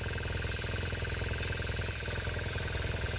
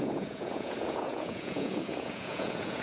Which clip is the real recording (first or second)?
first